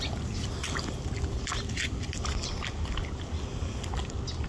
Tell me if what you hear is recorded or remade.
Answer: recorded